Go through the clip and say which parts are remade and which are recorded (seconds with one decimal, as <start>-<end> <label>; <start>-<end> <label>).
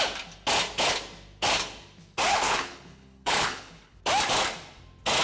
0.0-2.3 recorded; 2.3-4.0 remade; 4.0-5.2 recorded